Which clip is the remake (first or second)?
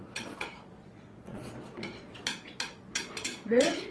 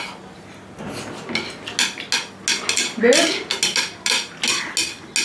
first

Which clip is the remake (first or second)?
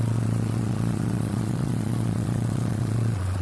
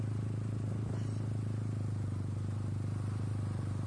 first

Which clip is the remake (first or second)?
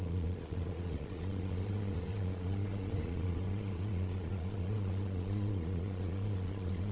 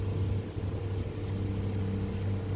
first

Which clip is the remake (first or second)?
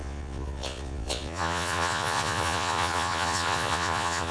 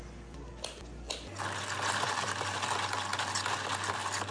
first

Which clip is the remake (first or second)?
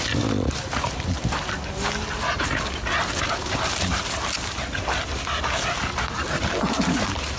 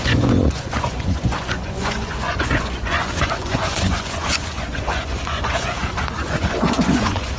second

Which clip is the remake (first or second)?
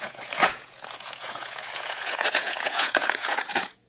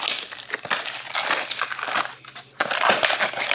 first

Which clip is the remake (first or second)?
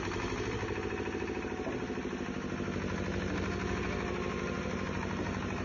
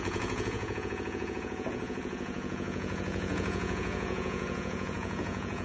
second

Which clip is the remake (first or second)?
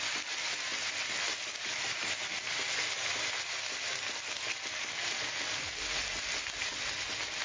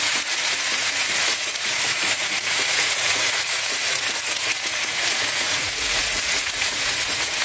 second